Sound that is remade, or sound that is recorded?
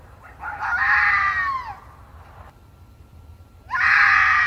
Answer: remade